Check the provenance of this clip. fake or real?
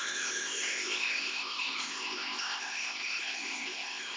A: fake